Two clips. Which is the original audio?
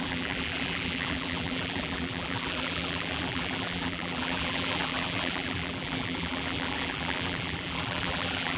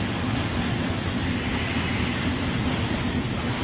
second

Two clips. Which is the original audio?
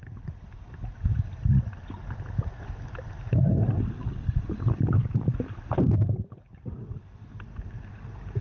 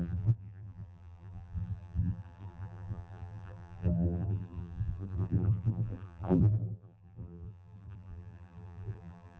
first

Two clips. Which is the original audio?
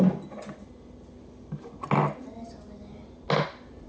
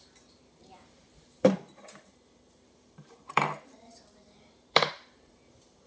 first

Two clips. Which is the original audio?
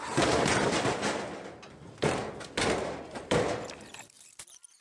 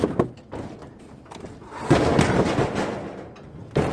second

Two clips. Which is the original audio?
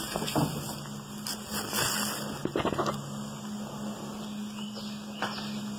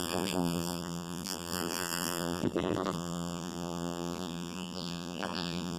first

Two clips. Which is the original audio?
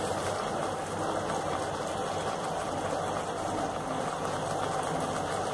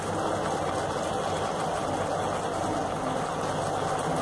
second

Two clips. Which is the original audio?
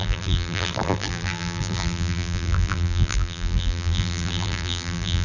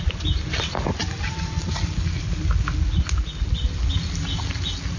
second